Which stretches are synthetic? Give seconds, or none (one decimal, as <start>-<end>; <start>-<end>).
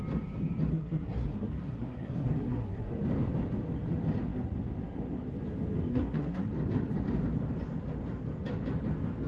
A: 0.7-2.9; 5.9-6.5